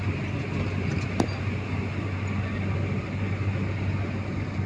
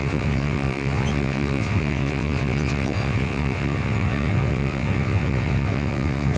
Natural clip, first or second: first